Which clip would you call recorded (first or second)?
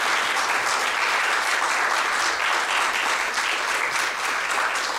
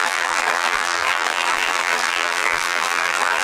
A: first